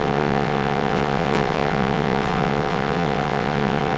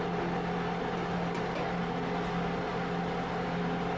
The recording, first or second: second